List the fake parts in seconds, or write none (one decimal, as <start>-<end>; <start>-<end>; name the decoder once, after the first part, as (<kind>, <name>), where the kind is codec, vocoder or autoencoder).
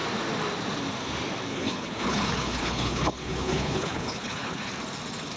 1.5-4.7 (codec, HILCodec)